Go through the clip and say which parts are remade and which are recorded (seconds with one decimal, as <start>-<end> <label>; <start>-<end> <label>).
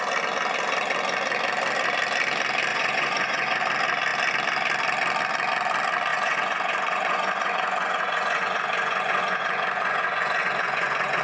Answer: 0.0-2.7 recorded; 2.7-3.6 remade; 3.6-6.1 recorded; 6.1-11.2 remade